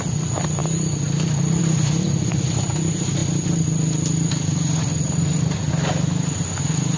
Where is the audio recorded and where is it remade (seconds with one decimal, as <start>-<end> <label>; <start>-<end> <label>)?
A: 0.0-7.0 recorded